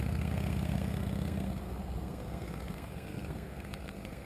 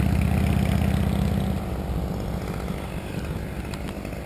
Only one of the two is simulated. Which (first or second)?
first